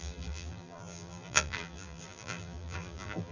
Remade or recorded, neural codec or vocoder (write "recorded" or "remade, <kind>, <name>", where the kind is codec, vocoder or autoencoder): remade, vocoder, BigVGAN v2